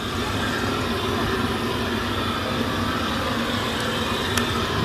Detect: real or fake real